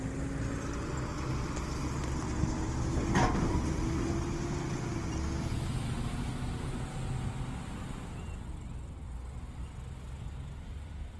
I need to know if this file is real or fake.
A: real